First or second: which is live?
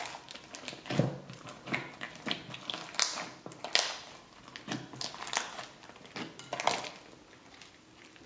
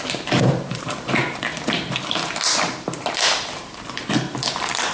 first